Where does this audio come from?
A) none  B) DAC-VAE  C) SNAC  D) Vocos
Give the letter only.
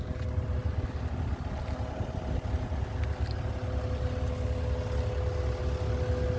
A